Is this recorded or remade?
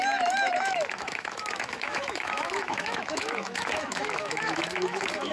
remade